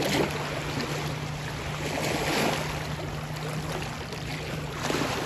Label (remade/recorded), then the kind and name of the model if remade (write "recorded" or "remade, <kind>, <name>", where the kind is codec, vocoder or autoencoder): recorded